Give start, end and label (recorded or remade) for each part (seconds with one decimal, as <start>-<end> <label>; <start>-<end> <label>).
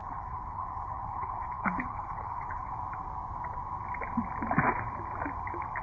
0.0-2.7 remade; 2.7-5.8 recorded